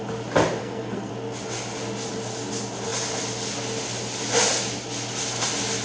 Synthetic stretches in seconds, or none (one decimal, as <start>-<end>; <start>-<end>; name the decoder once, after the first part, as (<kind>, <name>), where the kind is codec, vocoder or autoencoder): 0.6-1.1 (codec, SNAC)